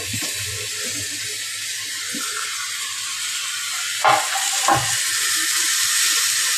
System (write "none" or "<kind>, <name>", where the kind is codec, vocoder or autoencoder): none